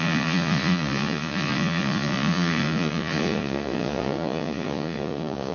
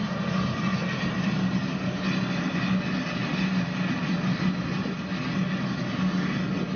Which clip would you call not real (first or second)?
first